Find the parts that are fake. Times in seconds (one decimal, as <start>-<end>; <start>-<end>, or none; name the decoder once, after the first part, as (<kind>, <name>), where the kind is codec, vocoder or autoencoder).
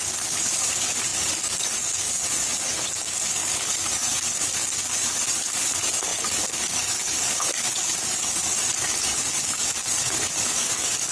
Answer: 0.0-11.1 (codec, DAC)